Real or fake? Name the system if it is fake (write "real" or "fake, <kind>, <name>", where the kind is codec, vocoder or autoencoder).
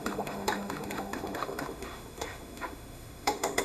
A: fake, autoencoder, DAC-VAE